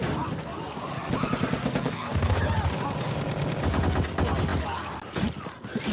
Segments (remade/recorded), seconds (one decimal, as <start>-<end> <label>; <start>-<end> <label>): 0.0-1.6 recorded; 1.6-2.4 remade; 2.4-5.9 recorded